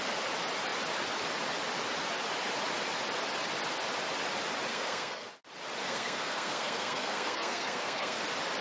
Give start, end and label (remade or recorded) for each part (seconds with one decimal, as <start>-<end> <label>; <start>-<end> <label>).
0.0-4.7 recorded; 4.7-5.3 remade; 5.3-5.8 recorded; 5.8-8.2 remade; 8.2-8.6 recorded